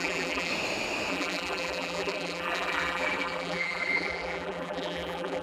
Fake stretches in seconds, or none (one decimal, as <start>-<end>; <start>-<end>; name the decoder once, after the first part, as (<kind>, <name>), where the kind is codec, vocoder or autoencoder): 0.0-0.5 (vocoder, BigVGAN v2); 1.1-5.4